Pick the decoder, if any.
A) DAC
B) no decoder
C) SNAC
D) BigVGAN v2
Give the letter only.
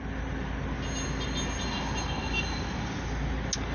B